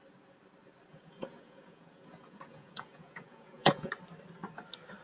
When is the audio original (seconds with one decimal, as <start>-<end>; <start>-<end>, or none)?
0.0-0.9; 3.9-5.0